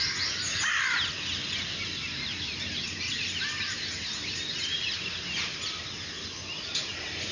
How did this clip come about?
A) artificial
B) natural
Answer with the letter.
B